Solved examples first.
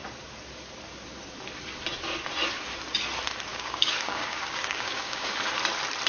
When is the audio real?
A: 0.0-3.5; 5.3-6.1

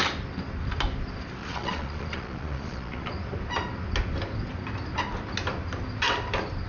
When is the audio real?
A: 0.0-1.4; 3.1-6.7

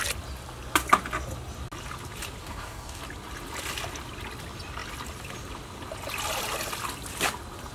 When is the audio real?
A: 0.0-2.4; 3.0-7.7

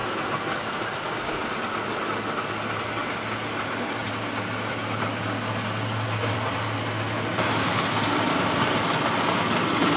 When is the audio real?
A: 0.0-10.0

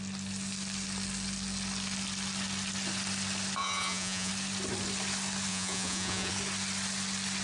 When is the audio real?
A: 0.0-3.6; 4.3-5.5; 6.3-7.4

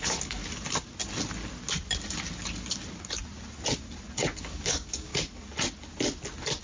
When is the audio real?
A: 0.4-4.4; 5.1-6.6

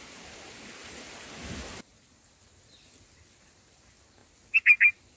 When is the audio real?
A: 0.0-5.2